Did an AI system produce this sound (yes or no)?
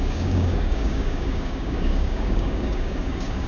yes